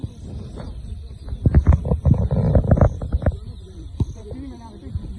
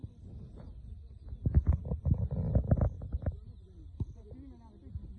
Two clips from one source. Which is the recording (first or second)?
second